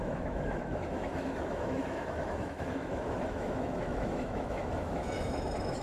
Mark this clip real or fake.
fake